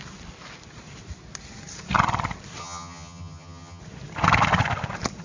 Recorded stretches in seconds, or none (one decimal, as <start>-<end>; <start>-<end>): 0.0-2.6; 3.8-5.2